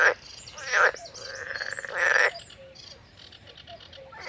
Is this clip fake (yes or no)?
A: no